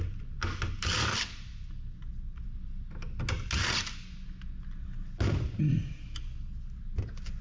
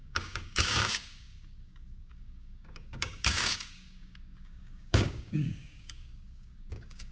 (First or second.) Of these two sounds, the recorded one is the first